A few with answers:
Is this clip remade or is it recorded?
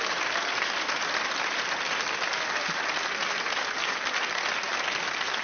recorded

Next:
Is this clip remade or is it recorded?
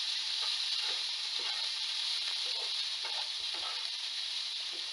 remade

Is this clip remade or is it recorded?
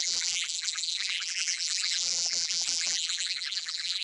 remade